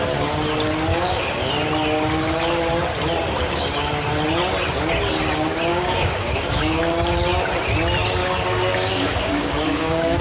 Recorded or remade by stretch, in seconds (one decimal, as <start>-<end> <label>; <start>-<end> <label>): 0.0-0.9 recorded; 0.9-1.5 remade; 1.5-5.7 recorded; 5.7-6.8 remade; 6.8-8.2 recorded; 8.2-10.2 remade